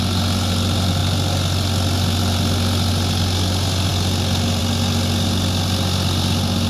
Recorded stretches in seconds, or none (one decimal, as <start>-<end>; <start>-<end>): 0.0-6.7